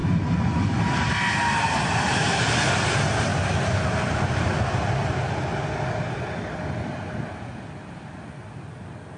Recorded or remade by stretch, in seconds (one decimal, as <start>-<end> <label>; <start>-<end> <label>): 0.0-9.2 recorded